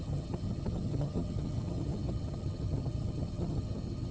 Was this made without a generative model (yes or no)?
no